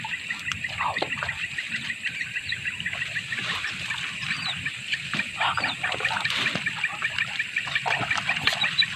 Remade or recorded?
recorded